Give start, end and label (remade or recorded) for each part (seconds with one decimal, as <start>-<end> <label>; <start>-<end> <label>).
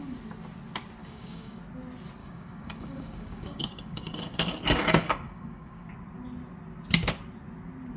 0.0-1.0 recorded; 1.0-1.6 remade; 1.6-2.2 recorded; 2.2-5.9 remade; 5.9-8.0 recorded